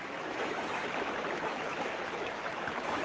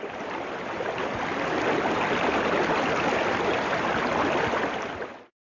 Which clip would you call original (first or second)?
second